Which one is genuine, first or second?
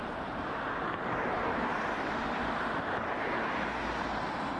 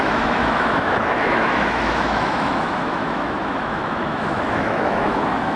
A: first